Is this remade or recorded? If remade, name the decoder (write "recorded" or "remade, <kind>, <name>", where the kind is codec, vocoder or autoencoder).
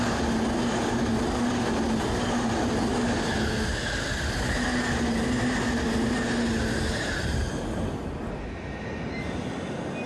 recorded